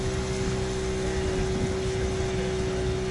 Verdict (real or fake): real